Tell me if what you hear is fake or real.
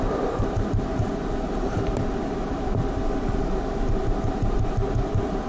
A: fake